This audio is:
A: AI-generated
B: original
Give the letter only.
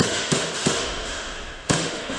A